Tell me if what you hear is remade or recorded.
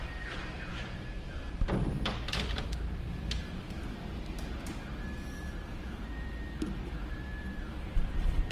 remade